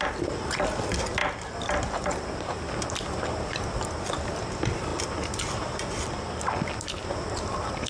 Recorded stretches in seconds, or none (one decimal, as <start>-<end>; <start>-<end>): 0.0-7.9